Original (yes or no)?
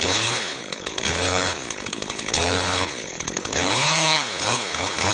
no